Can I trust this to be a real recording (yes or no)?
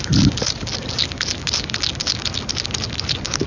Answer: yes